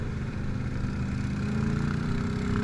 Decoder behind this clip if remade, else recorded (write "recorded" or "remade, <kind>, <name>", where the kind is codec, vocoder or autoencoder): recorded